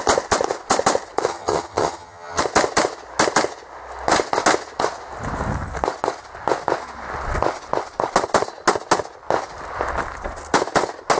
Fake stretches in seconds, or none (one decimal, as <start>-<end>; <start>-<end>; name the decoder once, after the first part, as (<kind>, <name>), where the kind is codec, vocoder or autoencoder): 1.3-2.4 (vocoder, HiFi-GAN)